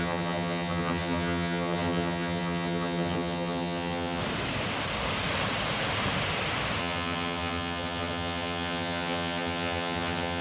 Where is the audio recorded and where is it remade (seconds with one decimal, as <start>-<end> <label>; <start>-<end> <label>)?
0.0-4.2 remade; 4.2-6.8 recorded; 6.8-10.4 remade